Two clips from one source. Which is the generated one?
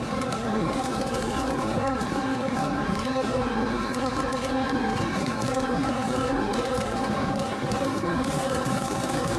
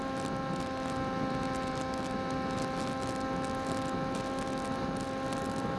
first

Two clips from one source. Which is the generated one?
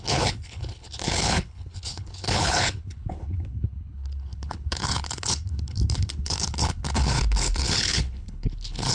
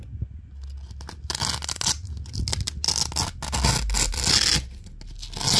first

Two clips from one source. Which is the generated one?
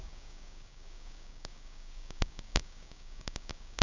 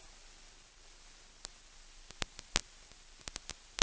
first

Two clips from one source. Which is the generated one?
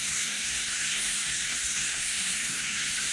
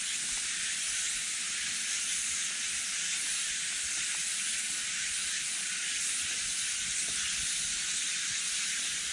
first